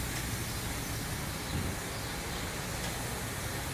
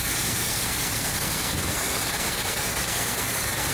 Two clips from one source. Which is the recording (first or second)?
first